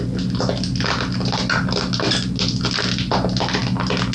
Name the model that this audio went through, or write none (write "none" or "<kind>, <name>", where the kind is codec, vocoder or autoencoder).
none